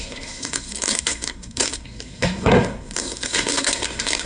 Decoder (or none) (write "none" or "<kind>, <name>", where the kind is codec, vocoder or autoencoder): codec, SNAC